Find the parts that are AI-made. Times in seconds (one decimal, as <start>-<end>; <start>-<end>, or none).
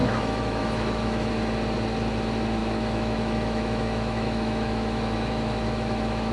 0.0-1.3; 2.6-6.3